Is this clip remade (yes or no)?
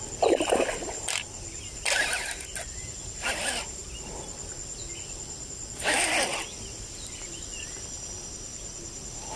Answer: no